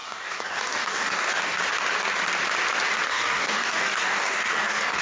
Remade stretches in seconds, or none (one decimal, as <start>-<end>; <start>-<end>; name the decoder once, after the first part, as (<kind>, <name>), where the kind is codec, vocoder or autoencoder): 0.0-1.6 (codec, DAC); 3.1-5.0